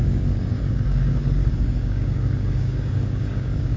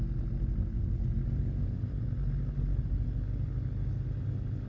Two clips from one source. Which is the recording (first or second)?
second